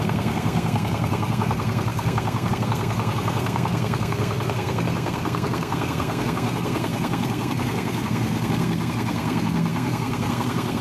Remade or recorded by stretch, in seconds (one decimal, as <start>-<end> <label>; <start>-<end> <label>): 0.0-10.8 remade